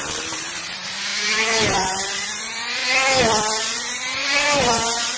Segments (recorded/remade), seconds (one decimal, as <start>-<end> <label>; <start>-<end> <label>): 0.0-2.8 remade; 2.8-3.6 recorded; 3.6-5.2 remade